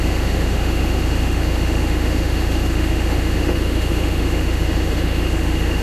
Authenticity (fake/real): fake